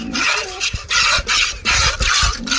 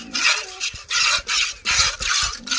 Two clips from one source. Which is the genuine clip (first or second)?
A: second